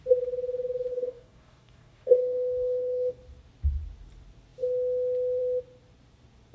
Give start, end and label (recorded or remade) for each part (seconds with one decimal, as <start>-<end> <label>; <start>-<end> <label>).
0.0-0.9 recorded; 0.9-3.2 remade; 3.2-6.5 recorded